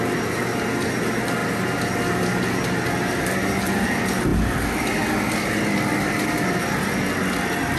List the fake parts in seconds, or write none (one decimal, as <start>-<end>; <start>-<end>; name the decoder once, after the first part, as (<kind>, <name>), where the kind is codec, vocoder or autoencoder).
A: none